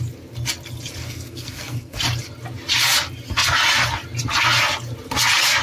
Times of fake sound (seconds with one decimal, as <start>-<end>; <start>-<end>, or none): 1.0-2.0